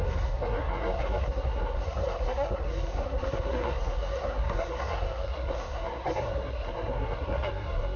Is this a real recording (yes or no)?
no